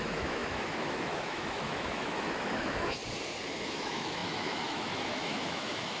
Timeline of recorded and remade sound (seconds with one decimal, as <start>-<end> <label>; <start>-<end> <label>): 0.0-3.0 remade; 3.0-3.5 recorded; 3.5-6.0 remade